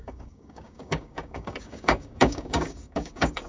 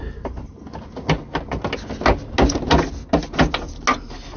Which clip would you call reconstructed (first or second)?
first